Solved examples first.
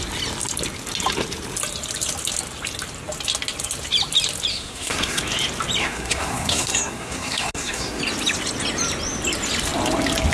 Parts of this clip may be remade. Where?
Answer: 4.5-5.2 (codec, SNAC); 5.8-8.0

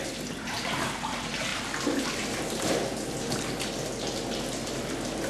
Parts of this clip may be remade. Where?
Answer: none